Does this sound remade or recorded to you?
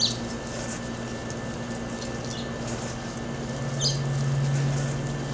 recorded